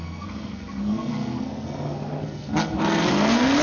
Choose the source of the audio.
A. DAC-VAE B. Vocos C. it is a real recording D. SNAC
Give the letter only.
D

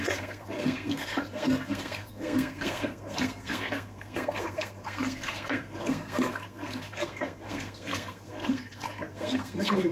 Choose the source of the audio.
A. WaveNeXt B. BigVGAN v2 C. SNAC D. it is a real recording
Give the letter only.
C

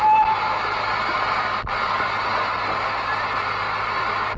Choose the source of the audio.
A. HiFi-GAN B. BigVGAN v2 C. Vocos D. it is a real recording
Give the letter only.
D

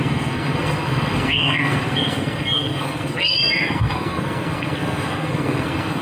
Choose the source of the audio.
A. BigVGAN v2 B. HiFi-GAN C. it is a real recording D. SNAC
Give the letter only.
D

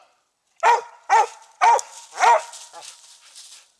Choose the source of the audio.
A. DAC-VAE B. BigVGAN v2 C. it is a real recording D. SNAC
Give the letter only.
C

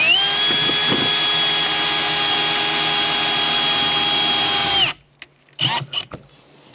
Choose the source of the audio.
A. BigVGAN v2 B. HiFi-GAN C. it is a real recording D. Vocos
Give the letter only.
C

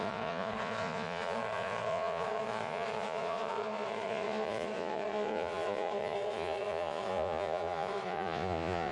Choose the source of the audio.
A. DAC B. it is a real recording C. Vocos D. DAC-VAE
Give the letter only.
C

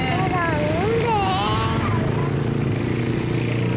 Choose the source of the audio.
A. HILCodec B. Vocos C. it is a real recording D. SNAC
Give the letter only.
C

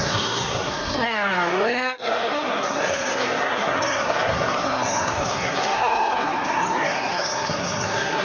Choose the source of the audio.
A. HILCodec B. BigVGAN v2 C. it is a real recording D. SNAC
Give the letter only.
D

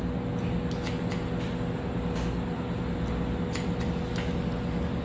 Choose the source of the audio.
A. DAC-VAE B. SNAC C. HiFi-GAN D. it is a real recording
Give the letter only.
D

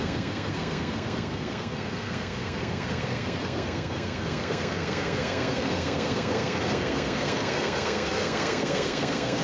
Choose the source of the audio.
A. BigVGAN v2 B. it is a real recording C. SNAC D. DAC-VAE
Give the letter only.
C